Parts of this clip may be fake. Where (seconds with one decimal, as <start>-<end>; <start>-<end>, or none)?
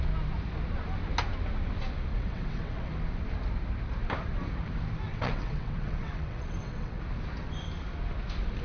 2.1-2.9; 5.1-7.0